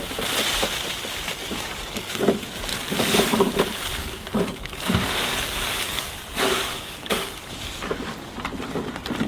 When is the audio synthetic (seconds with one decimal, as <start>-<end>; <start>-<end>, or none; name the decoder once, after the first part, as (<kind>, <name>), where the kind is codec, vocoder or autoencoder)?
1.4-2.3 (codec, DAC); 2.7-3.4; 3.9-8.2